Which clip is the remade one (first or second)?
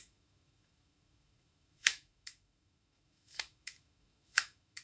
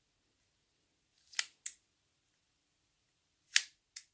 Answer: first